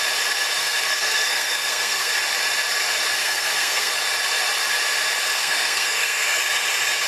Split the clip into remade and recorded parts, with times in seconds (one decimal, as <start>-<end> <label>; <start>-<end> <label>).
0.0-0.6 recorded; 0.6-2.1 remade; 2.1-3.2 recorded; 3.2-3.9 remade; 3.9-5.4 recorded; 5.4-6.4 remade; 6.4-7.1 recorded